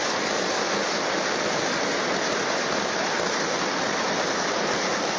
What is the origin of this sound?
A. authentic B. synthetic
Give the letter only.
A